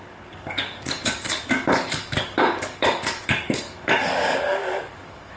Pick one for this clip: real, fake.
fake